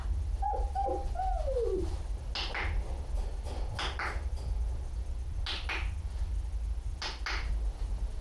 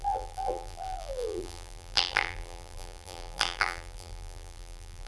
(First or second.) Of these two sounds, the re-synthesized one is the second